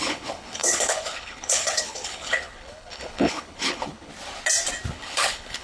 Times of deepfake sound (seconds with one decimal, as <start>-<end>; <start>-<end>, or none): 0.0-4.1; 4.9-5.6